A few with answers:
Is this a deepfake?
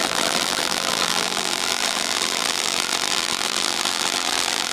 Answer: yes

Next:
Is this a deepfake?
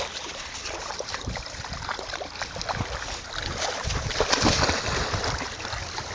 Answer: yes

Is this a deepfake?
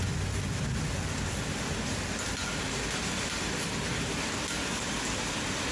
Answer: no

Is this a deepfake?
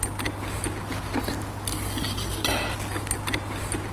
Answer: no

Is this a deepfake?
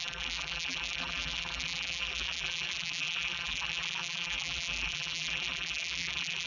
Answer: yes